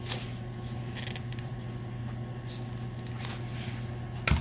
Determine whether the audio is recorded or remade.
recorded